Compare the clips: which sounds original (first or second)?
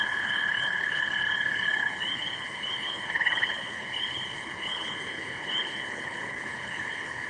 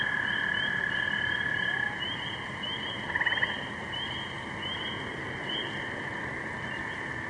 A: second